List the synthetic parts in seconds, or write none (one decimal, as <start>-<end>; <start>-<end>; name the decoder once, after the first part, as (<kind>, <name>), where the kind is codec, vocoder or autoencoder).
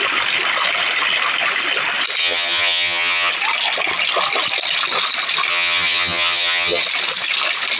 2.2-3.3 (vocoder, HiFi-GAN); 5.5-6.8